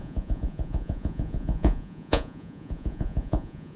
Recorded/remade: remade